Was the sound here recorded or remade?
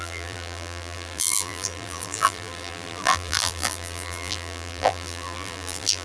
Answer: remade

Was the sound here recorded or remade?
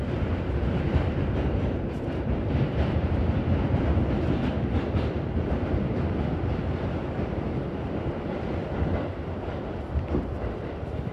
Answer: remade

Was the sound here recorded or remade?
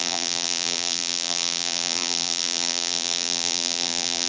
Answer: remade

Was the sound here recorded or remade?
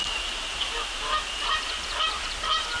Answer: recorded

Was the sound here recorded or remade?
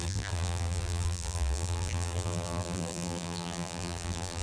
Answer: remade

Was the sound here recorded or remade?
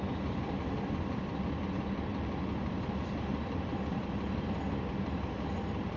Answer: remade